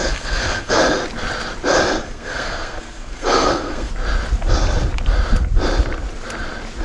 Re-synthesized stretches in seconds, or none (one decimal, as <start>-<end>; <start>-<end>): 0.0-0.8; 2.0-3.9